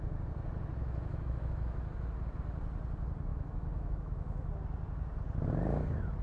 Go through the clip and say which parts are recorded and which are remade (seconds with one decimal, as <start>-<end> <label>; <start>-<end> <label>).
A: 0.0-0.8 recorded; 0.8-1.9 remade; 1.9-3.3 recorded; 3.3-4.5 remade; 4.5-6.2 recorded